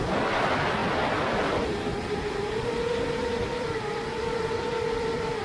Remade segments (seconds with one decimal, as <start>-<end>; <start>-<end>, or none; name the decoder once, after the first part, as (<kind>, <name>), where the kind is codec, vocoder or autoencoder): 0.0-0.8 (vocoder, BigVGAN v2); 1.5-5.4